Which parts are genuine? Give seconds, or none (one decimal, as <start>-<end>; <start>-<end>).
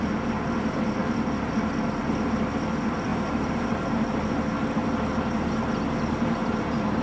0.0-3.1; 4.0-7.0